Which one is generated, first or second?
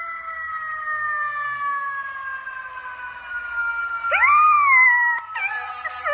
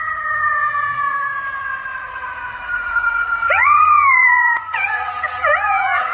second